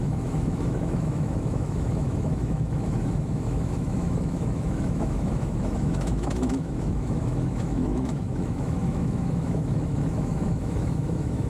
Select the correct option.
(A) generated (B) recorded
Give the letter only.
A